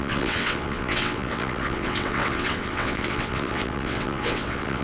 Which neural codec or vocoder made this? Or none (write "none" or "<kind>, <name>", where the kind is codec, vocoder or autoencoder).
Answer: vocoder, WaveNeXt